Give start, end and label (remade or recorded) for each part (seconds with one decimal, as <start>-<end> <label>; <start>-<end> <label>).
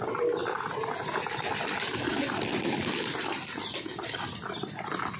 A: 0.0-4.4 remade; 4.4-5.2 recorded